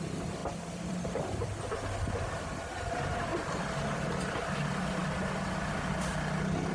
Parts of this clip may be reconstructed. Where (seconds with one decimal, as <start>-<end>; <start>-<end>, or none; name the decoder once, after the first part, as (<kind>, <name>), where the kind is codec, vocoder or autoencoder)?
0.4-1.6 (vocoder, BigVGAN v2)